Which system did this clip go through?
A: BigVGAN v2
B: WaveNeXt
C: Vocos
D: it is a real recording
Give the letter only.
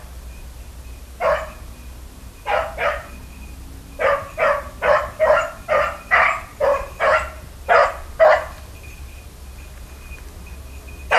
D